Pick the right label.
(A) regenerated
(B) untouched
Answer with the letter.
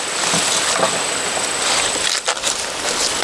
B